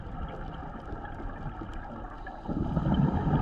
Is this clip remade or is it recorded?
recorded